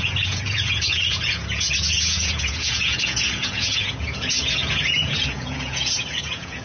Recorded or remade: remade